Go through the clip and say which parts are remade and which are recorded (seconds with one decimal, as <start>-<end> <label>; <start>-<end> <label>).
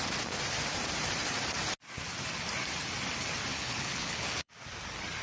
0.0-3.5 recorded; 3.5-4.5 remade; 4.5-5.2 recorded